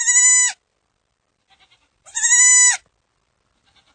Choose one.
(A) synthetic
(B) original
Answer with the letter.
B